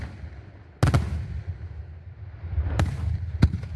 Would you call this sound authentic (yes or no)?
yes